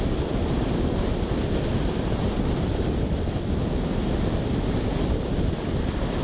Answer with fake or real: real